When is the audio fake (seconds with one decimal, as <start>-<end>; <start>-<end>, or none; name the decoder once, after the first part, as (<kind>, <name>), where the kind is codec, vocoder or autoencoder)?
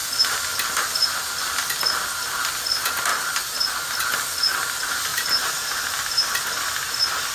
5.1-6.6 (vocoder, BigVGAN v2)